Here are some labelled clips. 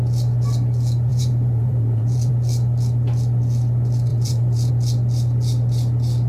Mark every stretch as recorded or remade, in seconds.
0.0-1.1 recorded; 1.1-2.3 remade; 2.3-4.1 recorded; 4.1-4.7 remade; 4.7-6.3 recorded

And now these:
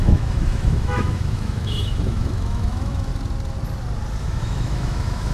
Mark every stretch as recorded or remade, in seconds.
0.0-3.1 remade; 3.1-4.2 recorded; 4.2-5.3 remade

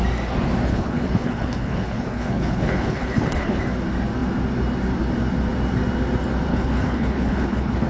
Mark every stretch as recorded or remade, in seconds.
0.0-0.7 recorded; 0.7-3.6 remade; 3.6-6.5 recorded; 6.5-7.9 remade

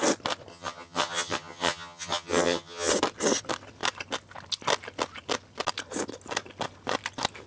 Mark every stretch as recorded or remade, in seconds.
0.0-0.5 recorded; 0.5-2.9 remade; 2.9-7.5 recorded

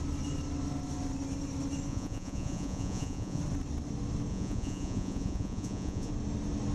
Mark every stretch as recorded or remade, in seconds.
0.0-1.9 recorded; 1.9-3.4 remade; 3.4-4.3 recorded; 4.3-6.1 remade; 6.1-6.7 recorded

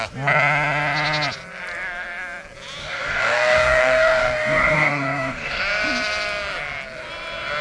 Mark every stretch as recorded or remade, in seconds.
0.0-2.8 recorded; 2.8-5.6 remade; 5.6-7.6 recorded

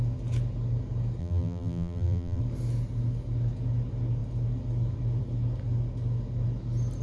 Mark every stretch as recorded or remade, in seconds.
0.0-1.2 recorded; 1.2-2.4 remade; 2.4-7.0 recorded